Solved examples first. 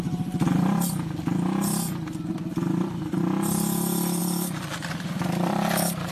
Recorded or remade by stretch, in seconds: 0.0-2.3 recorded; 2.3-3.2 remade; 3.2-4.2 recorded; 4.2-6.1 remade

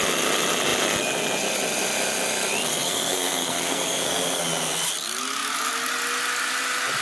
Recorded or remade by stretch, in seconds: 0.0-2.7 recorded; 2.7-4.4 remade; 4.4-7.0 recorded

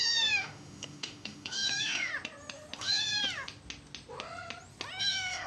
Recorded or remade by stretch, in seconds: 0.0-2.1 remade; 2.1-2.8 recorded; 2.8-3.2 remade; 3.2-5.0 recorded; 5.0-5.5 remade